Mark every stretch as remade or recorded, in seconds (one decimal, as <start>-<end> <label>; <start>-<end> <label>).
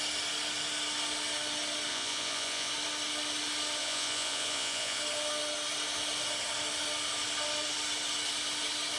0.0-1.9 recorded; 1.9-2.7 remade; 2.7-3.8 recorded; 3.8-5.0 remade; 5.0-9.0 recorded